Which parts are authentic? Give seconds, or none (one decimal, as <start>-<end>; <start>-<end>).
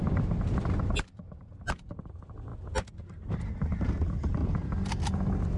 2.5-3.3; 4.4-5.6